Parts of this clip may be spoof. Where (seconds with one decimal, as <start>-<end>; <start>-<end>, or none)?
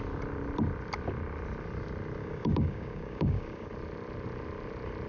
2.2-3.7